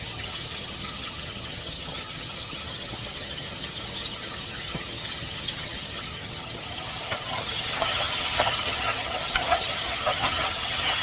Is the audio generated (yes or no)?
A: yes